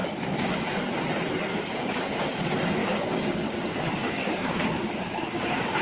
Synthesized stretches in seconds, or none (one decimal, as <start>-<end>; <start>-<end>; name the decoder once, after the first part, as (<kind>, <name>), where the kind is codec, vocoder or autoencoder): 0.0-0.8 (codec, DAC); 1.5-2.4; 2.8-5.8